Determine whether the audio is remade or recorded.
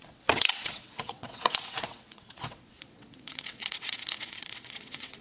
remade